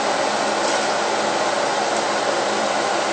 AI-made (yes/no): no